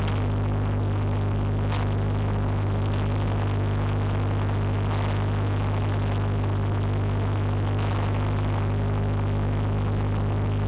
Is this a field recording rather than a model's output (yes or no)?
yes